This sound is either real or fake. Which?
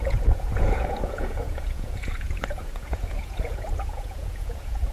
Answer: fake